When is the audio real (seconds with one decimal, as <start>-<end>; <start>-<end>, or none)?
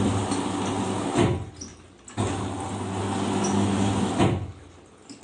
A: 0.0-5.2